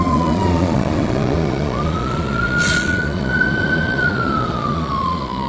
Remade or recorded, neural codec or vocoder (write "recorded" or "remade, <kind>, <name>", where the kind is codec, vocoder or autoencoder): remade, vocoder, Vocos